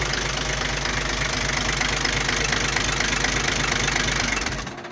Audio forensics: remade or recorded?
recorded